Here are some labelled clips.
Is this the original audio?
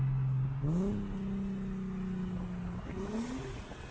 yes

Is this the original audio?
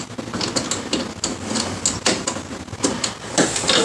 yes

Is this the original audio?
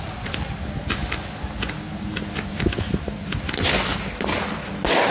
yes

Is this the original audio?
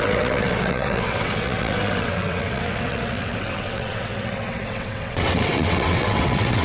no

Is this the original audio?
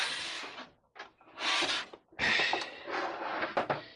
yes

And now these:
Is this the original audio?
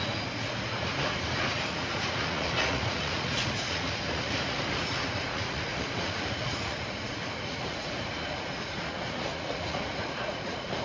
no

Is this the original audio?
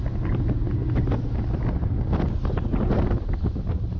yes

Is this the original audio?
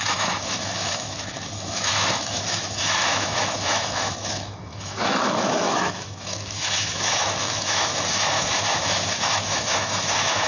no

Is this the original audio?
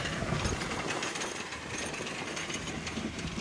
no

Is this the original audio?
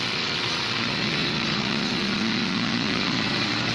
no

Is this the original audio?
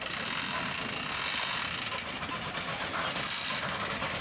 yes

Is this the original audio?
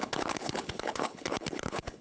no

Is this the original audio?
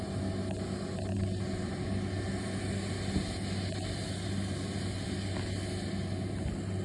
yes